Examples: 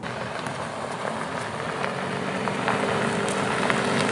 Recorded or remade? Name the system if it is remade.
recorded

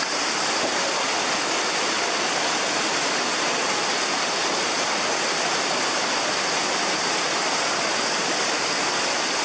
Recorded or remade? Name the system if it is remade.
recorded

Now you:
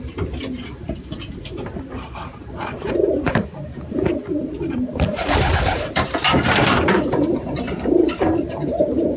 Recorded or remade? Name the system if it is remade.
remade, vocoder, BigVGAN v2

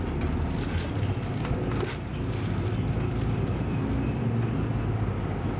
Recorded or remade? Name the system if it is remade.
recorded